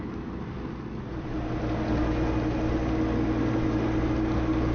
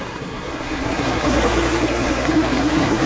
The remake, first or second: second